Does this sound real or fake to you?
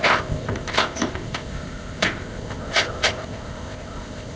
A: fake